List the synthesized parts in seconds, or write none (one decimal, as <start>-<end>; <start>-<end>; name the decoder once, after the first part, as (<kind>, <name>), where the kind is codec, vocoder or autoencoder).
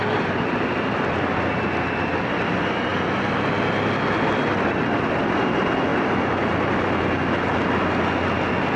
5.9-7.0 (vocoder, BigVGAN v2)